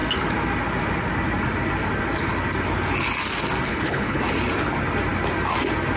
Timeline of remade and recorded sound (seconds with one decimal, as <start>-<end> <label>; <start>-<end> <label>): 0.0-3.7 recorded; 3.7-4.2 remade; 4.2-6.0 recorded